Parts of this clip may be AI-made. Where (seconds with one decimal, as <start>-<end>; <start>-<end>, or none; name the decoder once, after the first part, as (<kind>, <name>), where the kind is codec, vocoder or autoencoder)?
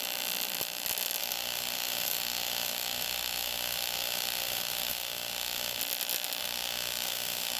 1.2-5.8 (autoencoder, DAC-VAE); 6.4-7.6